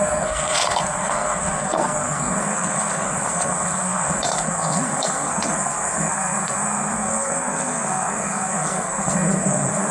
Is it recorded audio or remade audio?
remade